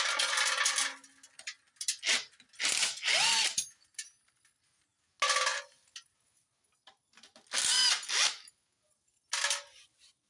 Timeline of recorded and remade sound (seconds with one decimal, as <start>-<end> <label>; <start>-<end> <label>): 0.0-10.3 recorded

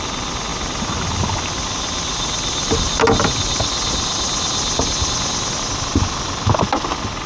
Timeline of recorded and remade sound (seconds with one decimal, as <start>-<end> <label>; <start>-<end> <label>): 0.0-7.3 recorded

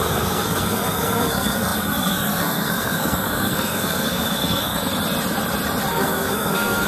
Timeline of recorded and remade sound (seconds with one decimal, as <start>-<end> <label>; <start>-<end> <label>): 0.0-4.9 remade; 4.9-5.9 recorded; 5.9-6.9 remade

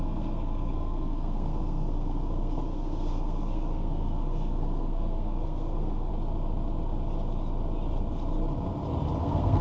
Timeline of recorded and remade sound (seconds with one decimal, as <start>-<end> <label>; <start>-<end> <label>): 0.0-6.1 remade; 6.1-9.2 recorded; 9.2-9.6 remade

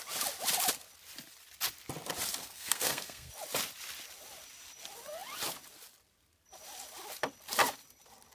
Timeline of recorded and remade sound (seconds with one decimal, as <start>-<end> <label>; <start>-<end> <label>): 0.0-2.4 recorded; 2.4-3.3 remade; 3.3-8.3 recorded

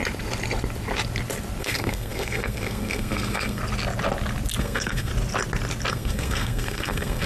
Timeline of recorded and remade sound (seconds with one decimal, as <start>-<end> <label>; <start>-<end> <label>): 0.0-1.6 recorded; 1.6-3.6 remade; 3.6-4.6 recorded; 4.6-5.1 remade; 5.1-5.9 recorded; 5.9-7.3 remade

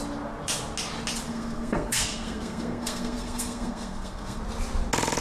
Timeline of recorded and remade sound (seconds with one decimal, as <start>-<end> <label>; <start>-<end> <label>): 0.0-1.3 recorded; 1.3-4.4 remade; 4.4-5.2 recorded

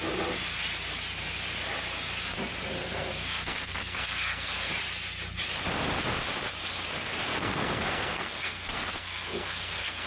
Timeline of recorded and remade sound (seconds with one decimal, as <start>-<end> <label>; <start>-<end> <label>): 0.0-2.8 recorded; 2.8-4.7 remade; 4.7-7.3 recorded; 7.3-10.1 remade